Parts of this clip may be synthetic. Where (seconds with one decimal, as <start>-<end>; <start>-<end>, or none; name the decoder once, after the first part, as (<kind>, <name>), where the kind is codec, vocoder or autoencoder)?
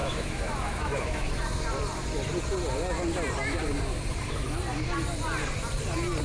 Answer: 0.0-1.3 (autoencoder, DAC-VAE)